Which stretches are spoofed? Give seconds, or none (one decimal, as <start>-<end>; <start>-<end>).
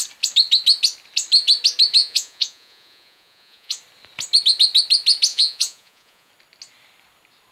2.0-3.8; 5.3-6.3